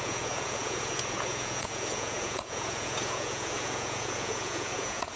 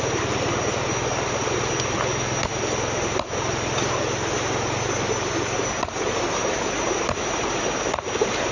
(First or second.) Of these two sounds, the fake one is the first